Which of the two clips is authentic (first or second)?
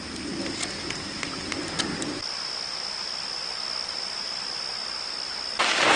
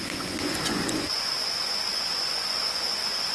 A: first